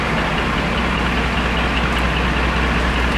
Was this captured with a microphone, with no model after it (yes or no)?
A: yes